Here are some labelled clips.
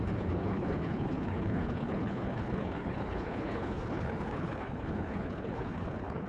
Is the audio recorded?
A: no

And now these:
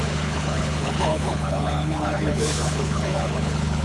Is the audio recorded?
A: no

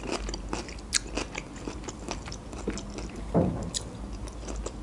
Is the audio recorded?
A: yes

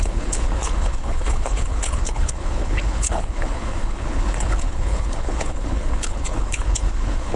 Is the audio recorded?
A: no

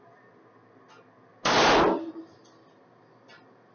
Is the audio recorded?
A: yes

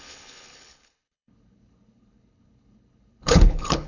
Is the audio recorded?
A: no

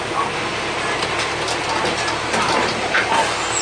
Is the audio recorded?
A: yes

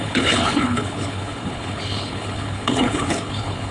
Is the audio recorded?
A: no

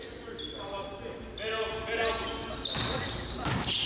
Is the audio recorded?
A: yes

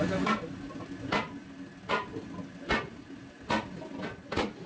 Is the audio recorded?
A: yes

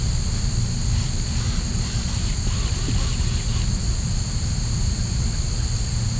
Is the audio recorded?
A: yes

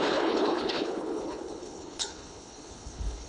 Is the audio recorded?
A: no